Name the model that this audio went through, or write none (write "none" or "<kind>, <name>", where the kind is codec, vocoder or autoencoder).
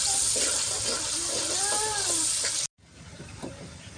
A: none